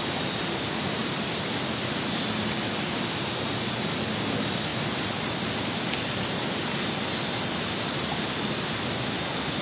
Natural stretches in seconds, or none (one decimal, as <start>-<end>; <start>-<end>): 0.0-9.6